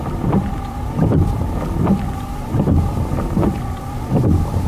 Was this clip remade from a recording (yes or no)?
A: yes